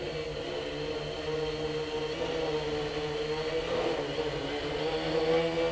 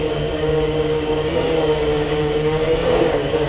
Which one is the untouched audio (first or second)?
first